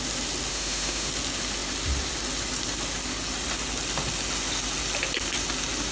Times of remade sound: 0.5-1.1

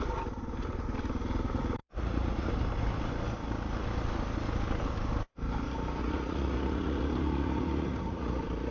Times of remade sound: 1.8-2.5; 6.0-8.7